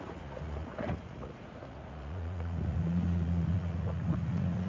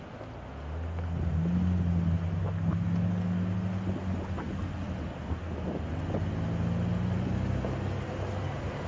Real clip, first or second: second